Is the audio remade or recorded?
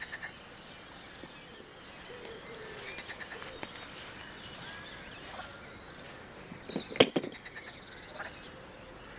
recorded